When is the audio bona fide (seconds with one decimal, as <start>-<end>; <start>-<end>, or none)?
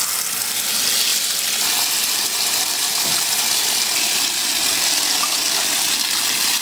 0.0-6.6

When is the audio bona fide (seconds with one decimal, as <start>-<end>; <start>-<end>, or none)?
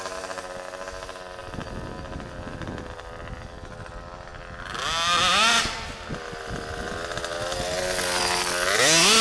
0.0-9.2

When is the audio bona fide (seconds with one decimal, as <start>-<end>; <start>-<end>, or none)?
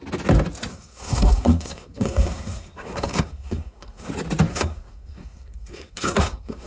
0.0-0.7; 4.1-4.5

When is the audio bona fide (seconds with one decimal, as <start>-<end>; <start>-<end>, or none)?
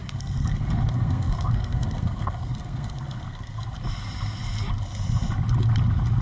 3.7-6.2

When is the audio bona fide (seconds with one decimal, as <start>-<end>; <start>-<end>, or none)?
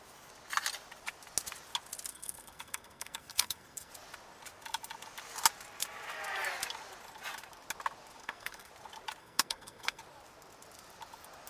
0.0-2.1; 3.9-8.2; 8.7-9.2; 10.0-11.5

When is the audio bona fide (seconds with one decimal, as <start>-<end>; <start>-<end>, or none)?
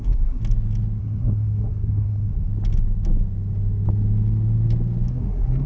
0.4-1.0; 2.5-5.1